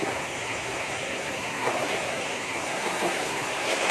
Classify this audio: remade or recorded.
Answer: remade